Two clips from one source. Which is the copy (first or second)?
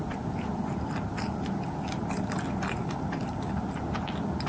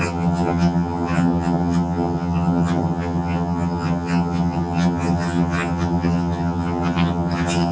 second